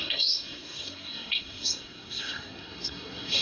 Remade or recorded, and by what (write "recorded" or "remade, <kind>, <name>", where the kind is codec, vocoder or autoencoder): remade, codec, SNAC